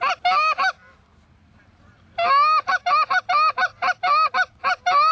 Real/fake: real